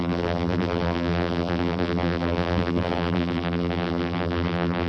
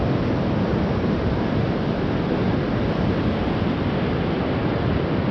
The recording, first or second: second